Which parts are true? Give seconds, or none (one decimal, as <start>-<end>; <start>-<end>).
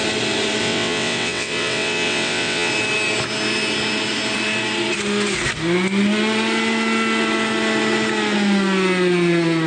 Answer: 0.0-0.6; 2.7-9.7